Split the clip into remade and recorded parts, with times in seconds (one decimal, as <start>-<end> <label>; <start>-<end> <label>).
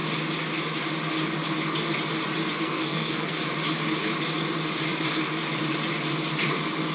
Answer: 0.0-2.5 recorded; 2.5-3.5 remade; 3.5-6.9 recorded